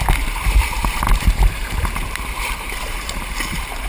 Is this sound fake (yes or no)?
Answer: yes